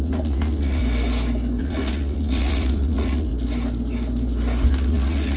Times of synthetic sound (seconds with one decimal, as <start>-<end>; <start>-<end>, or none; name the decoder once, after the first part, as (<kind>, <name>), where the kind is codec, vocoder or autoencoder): 0.0-0.8 (vocoder, Vocos); 1.6-3.3; 4.7-5.4